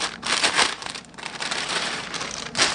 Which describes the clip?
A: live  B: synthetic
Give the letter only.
B